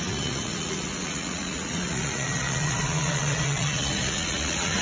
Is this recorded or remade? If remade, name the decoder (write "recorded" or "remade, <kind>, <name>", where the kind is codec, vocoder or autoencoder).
remade, vocoder, Vocos